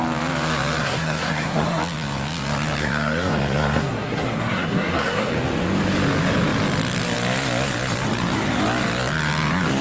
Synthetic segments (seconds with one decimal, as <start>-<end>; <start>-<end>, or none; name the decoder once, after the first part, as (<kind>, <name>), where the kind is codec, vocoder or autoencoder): 0.8-1.8 (codec, SNAC); 2.8-5.3